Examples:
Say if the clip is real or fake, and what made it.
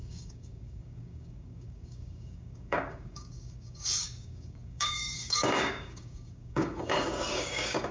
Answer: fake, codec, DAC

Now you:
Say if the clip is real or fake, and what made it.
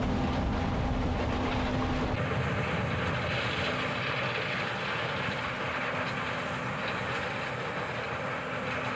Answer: real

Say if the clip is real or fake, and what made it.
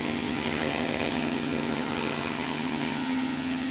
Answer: fake, vocoder, HiFi-GAN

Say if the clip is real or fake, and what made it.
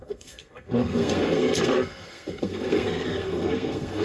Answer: fake, codec, SNAC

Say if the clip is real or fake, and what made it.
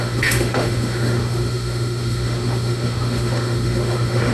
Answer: fake, autoencoder, DAC-VAE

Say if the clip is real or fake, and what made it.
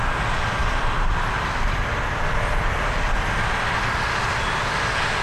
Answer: real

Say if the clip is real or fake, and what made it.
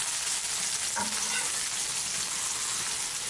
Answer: real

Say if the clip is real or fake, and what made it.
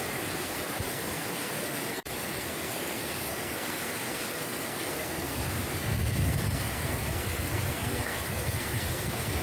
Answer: fake, codec, SNAC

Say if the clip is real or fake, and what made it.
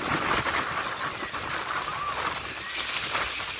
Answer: real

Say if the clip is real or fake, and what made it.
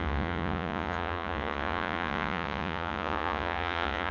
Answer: fake, vocoder, Vocos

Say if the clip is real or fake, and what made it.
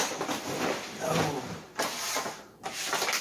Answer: real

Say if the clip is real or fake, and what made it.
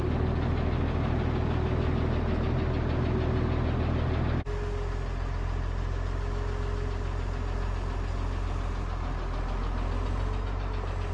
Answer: real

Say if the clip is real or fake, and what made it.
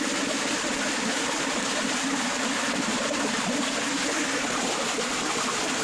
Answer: real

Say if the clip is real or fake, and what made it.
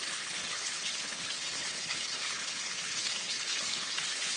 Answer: fake, codec, HILCodec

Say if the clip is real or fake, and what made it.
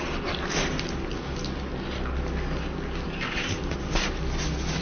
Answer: real